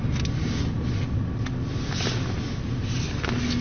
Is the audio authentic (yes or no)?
yes